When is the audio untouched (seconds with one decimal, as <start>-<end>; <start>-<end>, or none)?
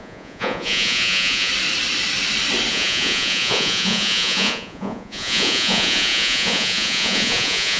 1.5-2.7